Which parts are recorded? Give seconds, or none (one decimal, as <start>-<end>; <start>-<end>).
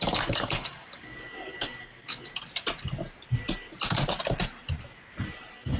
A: 2.3-5.8